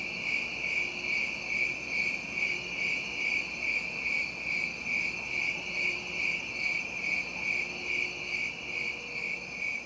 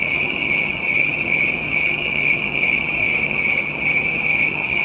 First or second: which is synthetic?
second